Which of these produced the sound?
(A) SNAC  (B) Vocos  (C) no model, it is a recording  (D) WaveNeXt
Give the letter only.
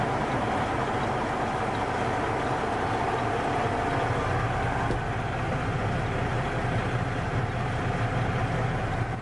C